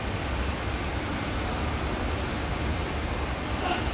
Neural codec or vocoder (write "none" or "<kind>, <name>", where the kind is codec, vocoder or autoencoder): none